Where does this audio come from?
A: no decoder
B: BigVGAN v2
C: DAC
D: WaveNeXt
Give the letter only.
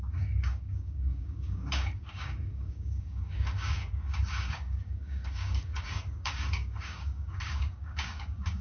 C